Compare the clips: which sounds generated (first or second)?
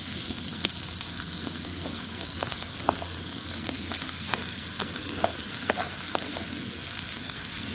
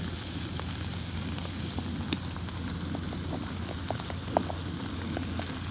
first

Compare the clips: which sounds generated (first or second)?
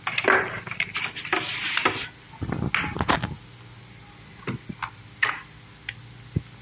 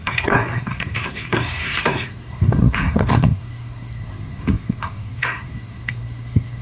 second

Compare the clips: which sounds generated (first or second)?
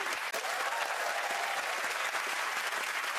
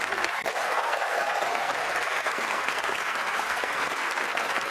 second